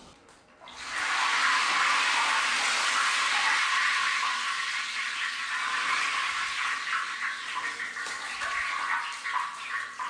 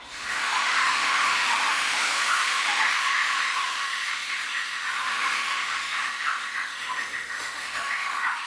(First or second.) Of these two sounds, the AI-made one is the second